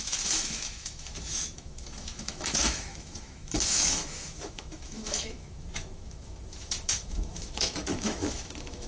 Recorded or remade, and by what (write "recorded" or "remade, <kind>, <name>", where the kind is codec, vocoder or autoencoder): remade, autoencoder, DAC-VAE